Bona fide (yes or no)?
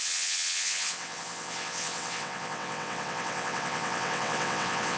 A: no